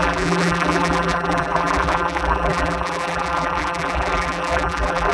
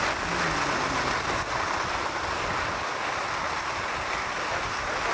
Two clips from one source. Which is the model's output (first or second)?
first